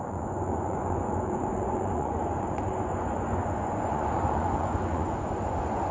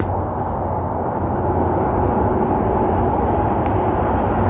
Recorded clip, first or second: second